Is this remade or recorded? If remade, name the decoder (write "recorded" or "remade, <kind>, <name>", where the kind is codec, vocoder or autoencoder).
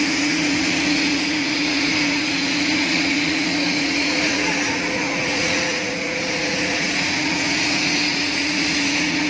remade, vocoder, Vocos